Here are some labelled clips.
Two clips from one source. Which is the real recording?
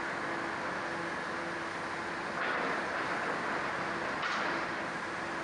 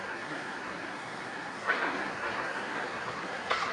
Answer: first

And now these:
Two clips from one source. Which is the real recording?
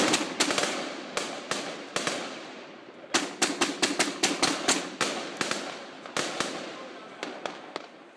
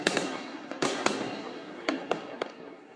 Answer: first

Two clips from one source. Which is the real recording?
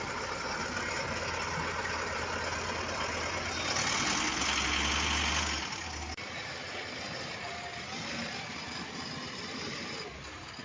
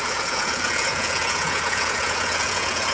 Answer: first